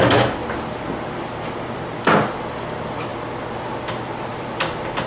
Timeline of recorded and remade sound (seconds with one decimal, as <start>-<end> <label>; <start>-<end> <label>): 0.0-3.1 recorded; 3.1-4.5 remade; 4.5-5.1 recorded